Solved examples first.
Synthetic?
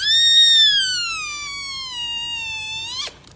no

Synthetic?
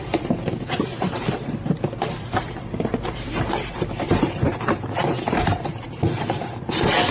yes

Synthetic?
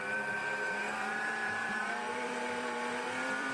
yes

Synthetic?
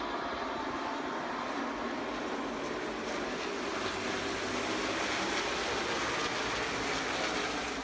no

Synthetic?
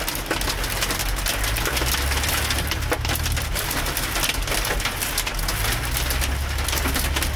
no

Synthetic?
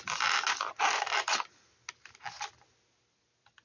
no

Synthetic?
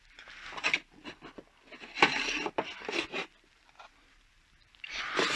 no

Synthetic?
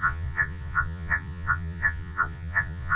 yes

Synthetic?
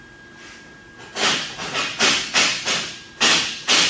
no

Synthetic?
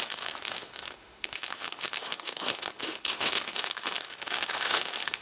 yes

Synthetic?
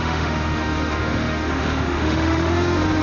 yes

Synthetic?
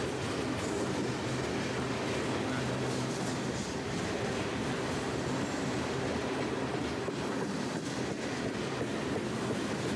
no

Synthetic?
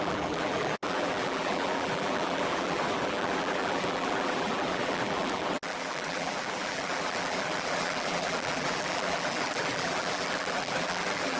yes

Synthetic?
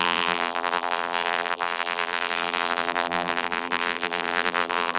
yes